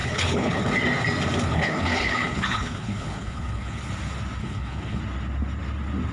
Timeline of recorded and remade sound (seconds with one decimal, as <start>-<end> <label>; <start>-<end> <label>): 0.0-0.6 remade; 0.6-1.5 recorded; 1.5-3.9 remade; 3.9-4.4 recorded; 4.4-5.0 remade; 5.0-6.1 recorded